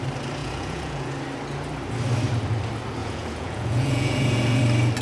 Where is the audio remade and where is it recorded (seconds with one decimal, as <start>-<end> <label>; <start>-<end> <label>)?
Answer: 0.0-0.4 recorded; 0.4-1.1 remade; 1.1-3.0 recorded; 3.0-4.6 remade; 4.6-5.0 recorded